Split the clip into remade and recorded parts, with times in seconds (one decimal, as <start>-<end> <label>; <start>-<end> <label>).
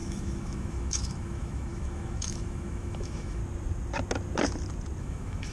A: 0.0-3.4 remade; 3.4-5.0 recorded; 5.0-5.5 remade